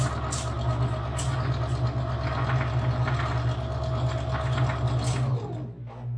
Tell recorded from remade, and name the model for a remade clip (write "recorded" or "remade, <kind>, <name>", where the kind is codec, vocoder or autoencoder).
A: recorded